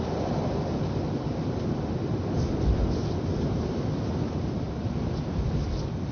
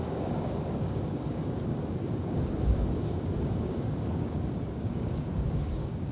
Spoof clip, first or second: second